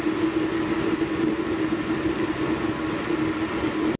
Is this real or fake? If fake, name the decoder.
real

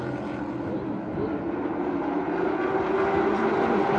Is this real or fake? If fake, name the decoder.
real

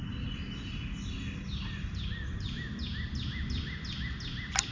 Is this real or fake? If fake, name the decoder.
real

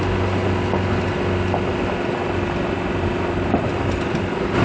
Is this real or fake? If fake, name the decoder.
real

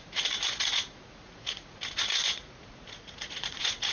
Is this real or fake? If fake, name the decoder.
fake, vocoder, Vocos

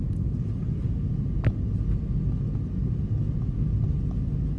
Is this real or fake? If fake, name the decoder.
real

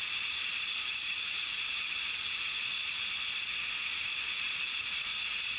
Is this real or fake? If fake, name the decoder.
fake, vocoder, Vocos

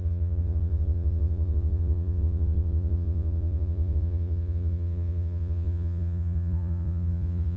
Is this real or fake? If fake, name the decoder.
fake, vocoder, Vocos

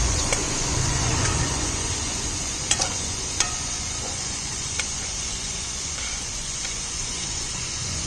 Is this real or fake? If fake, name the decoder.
fake, vocoder, Vocos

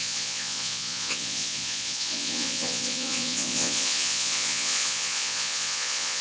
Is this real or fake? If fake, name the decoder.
fake, vocoder, Vocos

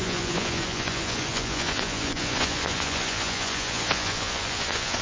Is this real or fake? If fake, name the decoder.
fake, vocoder, Vocos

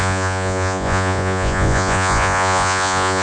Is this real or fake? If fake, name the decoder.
fake, vocoder, Vocos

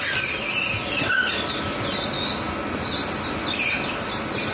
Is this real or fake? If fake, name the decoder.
real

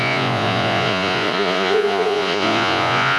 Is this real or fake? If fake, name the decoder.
fake, vocoder, Vocos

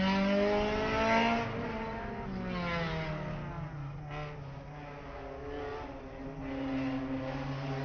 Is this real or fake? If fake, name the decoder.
real